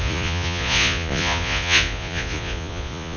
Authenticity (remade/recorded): remade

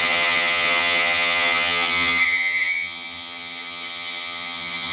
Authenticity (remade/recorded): remade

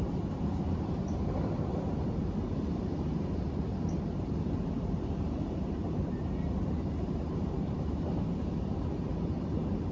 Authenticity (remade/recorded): remade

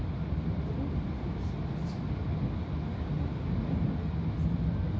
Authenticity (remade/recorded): recorded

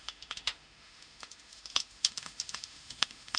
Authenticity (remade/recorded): remade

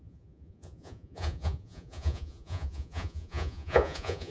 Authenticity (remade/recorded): remade